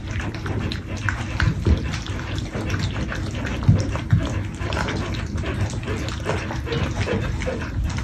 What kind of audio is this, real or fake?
real